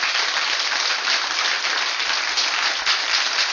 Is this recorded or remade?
recorded